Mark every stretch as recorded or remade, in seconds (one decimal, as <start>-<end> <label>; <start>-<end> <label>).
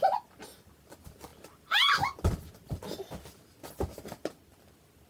0.0-5.1 recorded